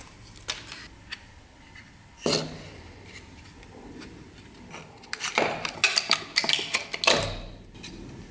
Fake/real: real